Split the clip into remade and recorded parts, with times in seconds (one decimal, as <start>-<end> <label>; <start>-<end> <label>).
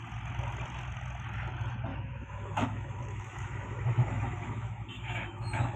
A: 0.0-1.9 recorded; 1.9-5.8 remade